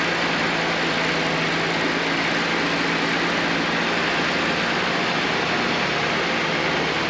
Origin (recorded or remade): recorded